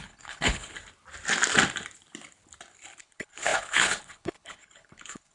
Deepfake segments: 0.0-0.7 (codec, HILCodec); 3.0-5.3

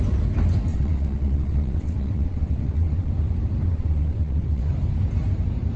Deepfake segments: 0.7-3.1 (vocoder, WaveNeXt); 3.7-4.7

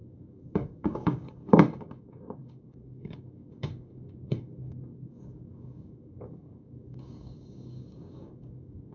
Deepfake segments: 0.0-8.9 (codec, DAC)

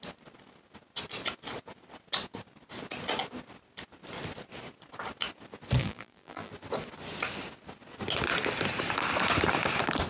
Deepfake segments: 5.8-6.5 (vocoder, BigVGAN v2)